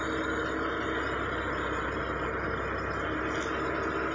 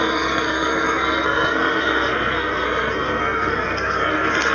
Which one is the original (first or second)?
first